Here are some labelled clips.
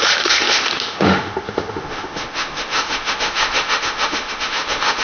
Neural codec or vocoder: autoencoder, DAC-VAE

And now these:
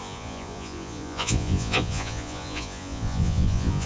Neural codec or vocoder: vocoder, Vocos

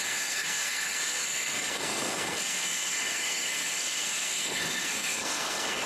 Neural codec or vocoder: codec, SNAC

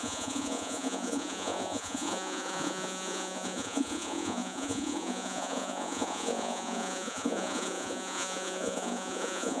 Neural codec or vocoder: vocoder, Vocos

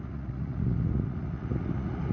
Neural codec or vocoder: vocoder, Vocos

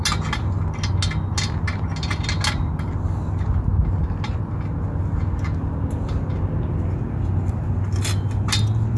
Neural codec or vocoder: none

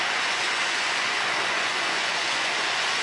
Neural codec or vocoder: vocoder, Vocos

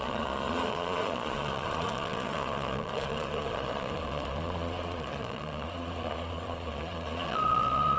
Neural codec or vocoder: vocoder, Vocos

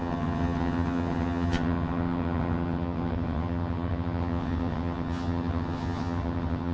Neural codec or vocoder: vocoder, HiFi-GAN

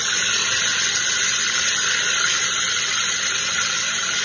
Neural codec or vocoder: vocoder, BigVGAN v2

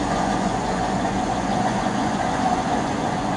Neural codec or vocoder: vocoder, Vocos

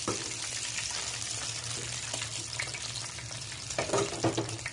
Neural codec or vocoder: none